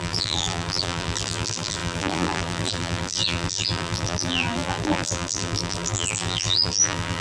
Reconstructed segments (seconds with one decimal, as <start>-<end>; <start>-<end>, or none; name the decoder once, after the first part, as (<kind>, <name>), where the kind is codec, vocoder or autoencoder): 0.0-7.2 (vocoder, BigVGAN v2)